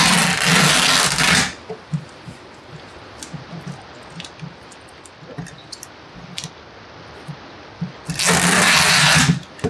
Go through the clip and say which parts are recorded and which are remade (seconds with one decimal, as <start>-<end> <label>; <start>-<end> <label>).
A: 0.0-9.7 recorded